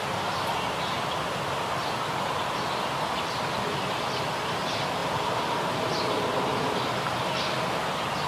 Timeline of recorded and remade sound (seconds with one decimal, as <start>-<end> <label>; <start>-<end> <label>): 0.0-5.0 recorded; 5.0-5.7 remade; 5.7-8.3 recorded